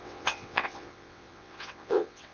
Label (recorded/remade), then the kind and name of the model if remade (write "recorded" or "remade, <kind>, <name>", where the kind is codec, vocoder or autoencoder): remade, vocoder, WaveNeXt